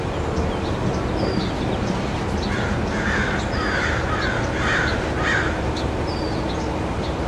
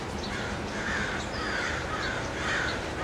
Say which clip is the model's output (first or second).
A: second